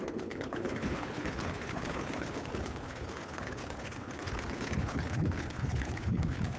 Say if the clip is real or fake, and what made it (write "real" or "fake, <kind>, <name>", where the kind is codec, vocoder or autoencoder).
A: fake, codec, HILCodec